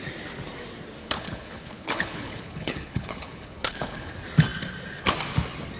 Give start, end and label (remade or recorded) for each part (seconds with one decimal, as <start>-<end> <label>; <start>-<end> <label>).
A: 0.0-1.0 recorded; 1.0-4.1 remade; 4.1-5.8 recorded